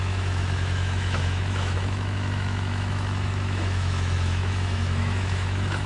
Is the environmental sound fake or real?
fake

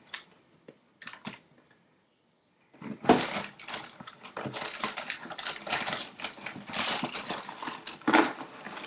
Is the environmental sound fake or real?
real